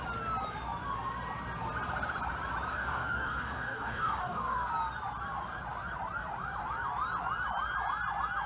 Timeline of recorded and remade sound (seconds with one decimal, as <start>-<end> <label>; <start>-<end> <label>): 0.0-2.7 recorded; 2.7-4.7 remade; 4.7-8.5 recorded